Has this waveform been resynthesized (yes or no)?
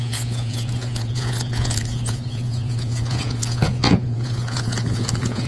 yes